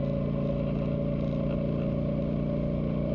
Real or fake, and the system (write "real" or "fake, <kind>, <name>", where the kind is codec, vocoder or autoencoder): real